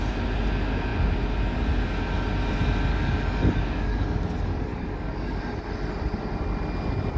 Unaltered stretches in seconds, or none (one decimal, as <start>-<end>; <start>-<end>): 0.0-2.9; 5.4-7.2

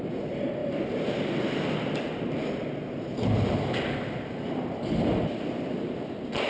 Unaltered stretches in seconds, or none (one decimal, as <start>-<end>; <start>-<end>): 0.0-6.5